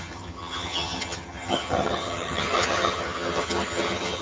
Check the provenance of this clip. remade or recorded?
remade